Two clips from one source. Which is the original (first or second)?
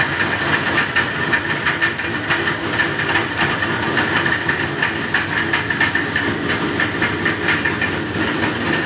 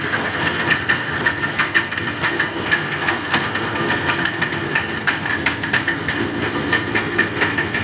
first